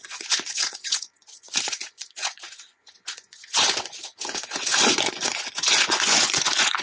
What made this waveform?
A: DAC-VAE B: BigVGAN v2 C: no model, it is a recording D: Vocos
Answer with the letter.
D